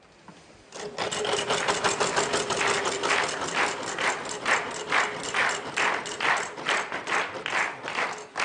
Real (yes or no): yes